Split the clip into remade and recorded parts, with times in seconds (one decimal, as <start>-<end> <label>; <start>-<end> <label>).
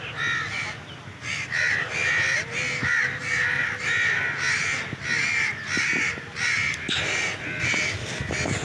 0.0-8.6 recorded